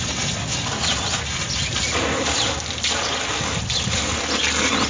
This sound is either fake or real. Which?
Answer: real